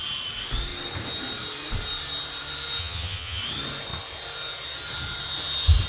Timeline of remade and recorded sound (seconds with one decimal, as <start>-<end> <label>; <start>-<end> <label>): 0.0-2.8 recorded; 2.8-3.4 remade; 3.4-5.9 recorded